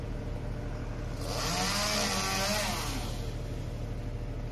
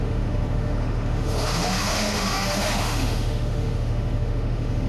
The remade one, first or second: second